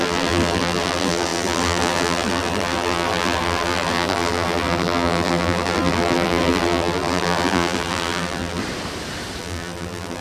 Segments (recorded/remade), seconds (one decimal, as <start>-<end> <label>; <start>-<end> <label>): 0.0-8.6 remade; 8.6-9.4 recorded; 9.4-10.2 remade